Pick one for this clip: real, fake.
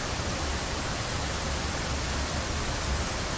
real